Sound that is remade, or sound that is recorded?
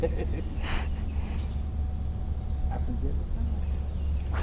recorded